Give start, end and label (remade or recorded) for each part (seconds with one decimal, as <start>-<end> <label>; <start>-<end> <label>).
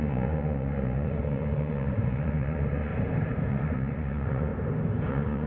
0.0-2.9 remade; 2.9-3.5 recorded; 3.5-4.5 remade; 4.5-5.1 recorded; 5.1-5.5 remade